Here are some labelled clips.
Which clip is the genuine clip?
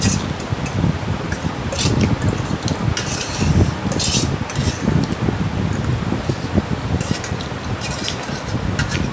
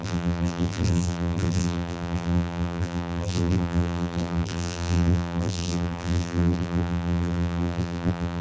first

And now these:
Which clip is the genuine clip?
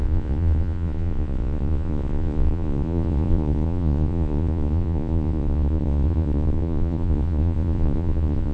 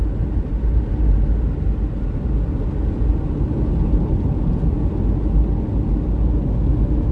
second